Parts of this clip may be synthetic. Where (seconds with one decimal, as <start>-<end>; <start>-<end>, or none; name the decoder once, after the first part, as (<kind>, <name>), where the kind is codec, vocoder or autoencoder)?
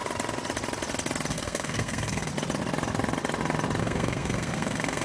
1.3-2.3 (codec, SNAC); 3.8-5.0